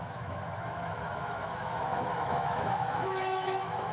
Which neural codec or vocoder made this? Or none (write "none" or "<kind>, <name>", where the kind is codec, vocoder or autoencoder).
autoencoder, DAC-VAE